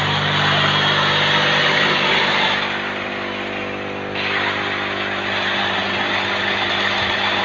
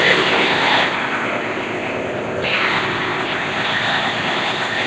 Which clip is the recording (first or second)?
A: first